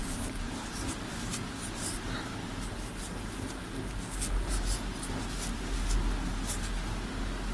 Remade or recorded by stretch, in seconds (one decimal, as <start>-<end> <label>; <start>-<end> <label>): 0.0-7.5 recorded